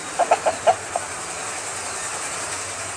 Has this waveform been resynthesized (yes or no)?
no